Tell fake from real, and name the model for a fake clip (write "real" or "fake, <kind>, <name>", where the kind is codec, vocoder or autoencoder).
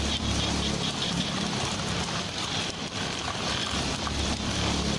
fake, vocoder, BigVGAN v2